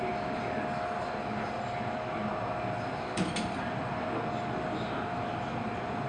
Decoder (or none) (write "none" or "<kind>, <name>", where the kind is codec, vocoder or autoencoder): none